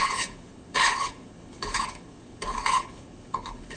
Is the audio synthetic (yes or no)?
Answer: yes